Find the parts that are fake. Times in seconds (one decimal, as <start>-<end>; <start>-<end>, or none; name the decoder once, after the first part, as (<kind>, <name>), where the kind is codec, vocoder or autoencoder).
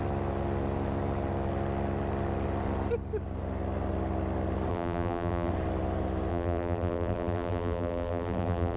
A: 4.7-5.5 (vocoder, BigVGAN v2); 6.3-8.8